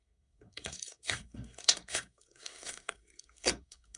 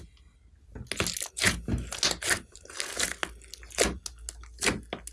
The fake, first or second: first